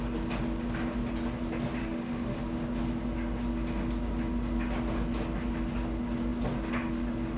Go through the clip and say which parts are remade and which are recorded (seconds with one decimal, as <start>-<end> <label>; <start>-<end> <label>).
0.0-1.8 recorded; 1.8-2.4 remade; 2.4-7.4 recorded